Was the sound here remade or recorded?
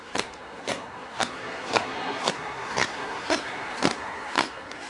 remade